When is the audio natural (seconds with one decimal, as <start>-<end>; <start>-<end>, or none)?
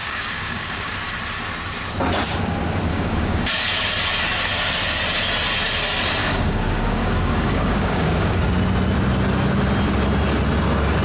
0.9-2.9; 3.5-6.2; 8.4-11.0